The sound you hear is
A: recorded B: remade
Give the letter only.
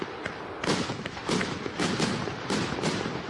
A